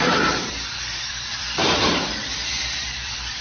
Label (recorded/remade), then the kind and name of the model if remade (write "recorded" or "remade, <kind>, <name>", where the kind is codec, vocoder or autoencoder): remade, vocoder, BigVGAN v2